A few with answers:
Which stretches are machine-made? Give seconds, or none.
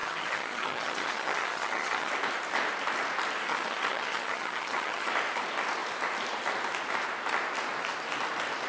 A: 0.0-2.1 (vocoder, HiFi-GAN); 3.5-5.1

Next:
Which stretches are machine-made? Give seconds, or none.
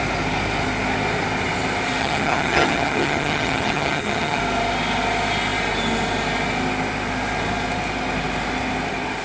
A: 2.0-4.4 (vocoder, HiFi-GAN)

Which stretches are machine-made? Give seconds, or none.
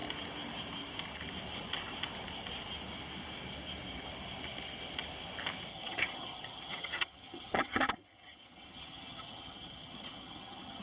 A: 5.7-10.8 (vocoder, HiFi-GAN)